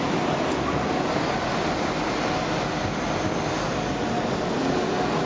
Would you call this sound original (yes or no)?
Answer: yes